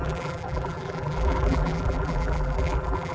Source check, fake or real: fake